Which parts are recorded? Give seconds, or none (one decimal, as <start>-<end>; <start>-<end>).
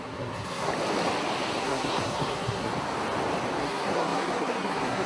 0.7-1.6; 2.7-3.6